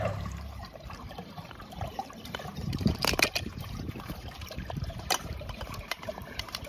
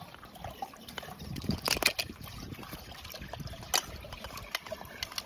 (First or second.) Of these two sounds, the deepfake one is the first